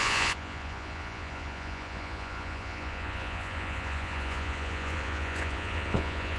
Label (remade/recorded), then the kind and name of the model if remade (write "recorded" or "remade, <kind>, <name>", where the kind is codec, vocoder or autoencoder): remade, vocoder, Vocos